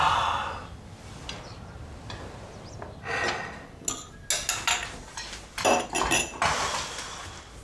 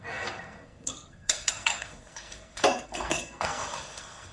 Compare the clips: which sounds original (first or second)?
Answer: first